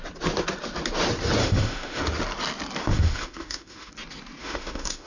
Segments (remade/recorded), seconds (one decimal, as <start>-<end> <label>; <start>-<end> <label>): 0.0-1.4 recorded; 1.4-2.0 remade; 2.0-2.8 recorded; 2.8-3.9 remade; 3.9-4.4 recorded; 4.4-5.1 remade